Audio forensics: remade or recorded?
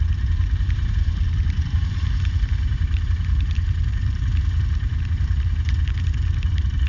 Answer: remade